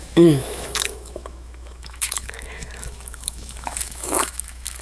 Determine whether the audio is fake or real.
fake